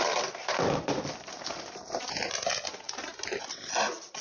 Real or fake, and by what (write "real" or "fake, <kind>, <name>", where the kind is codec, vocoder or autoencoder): real